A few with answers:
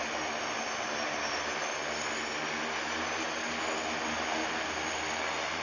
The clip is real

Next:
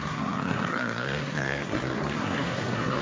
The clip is fake